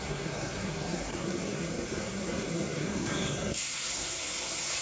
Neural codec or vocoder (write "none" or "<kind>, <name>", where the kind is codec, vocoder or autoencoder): codec, SNAC